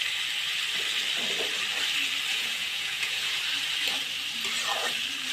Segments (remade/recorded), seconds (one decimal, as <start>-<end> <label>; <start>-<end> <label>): 0.0-2.3 recorded; 2.3-3.4 remade; 3.4-5.3 recorded